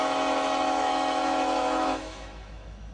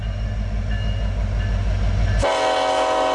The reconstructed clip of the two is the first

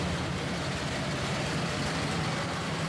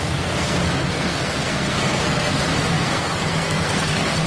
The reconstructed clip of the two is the second